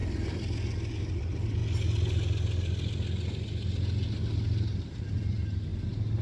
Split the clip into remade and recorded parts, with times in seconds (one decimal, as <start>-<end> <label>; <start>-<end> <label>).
0.0-0.9 recorded; 0.9-1.6 remade; 1.6-4.6 recorded; 4.6-6.2 remade